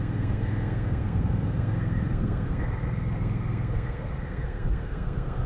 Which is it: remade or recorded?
remade